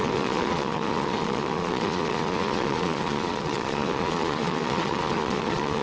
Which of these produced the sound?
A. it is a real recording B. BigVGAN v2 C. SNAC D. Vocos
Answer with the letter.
D